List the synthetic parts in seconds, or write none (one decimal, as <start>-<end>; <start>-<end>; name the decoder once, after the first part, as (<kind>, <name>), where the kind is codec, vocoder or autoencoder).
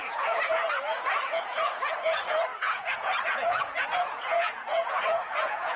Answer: 0.0-5.8 (vocoder, Vocos)